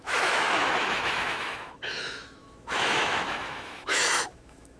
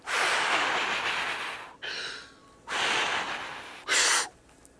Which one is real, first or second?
second